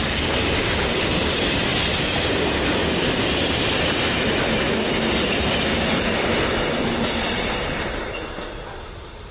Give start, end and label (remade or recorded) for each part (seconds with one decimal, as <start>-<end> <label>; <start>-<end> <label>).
0.0-9.3 recorded